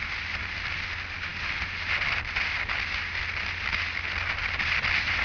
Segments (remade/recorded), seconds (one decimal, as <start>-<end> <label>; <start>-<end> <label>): 0.0-5.2 recorded